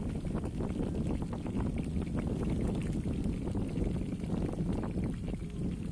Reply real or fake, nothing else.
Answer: real